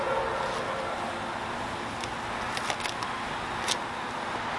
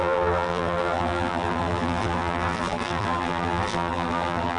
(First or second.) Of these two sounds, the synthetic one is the second